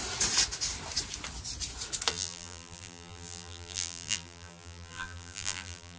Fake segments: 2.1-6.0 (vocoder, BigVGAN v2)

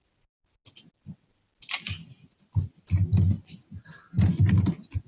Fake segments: none

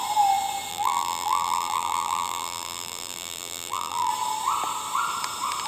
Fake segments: 0.7-4.1 (vocoder, BigVGAN v2)

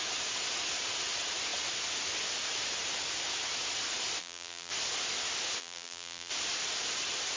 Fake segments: 4.2-4.7 (vocoder, BigVGAN v2); 5.6-6.3

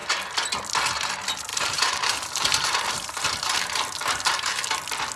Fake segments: 1.5-4.6 (vocoder, BigVGAN v2)

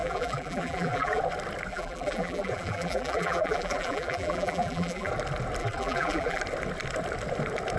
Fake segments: 0.0-1.2 (vocoder, BigVGAN v2); 1.7-5.1; 5.6-6.4

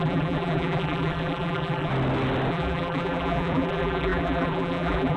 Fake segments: 0.0-1.9 (vocoder, BigVGAN v2); 2.5-5.2

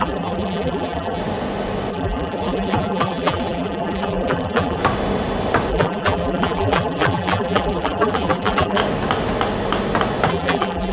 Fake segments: 0.0-1.2 (vocoder, BigVGAN v2); 1.9-4.8; 5.7-8.8; 10.3-10.9